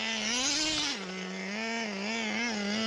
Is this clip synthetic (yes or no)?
no